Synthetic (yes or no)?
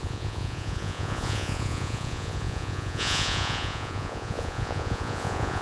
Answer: yes